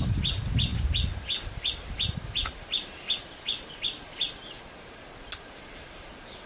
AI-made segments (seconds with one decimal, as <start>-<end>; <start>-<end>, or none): none